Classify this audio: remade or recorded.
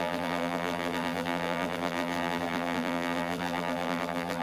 remade